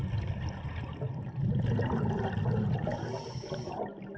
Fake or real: real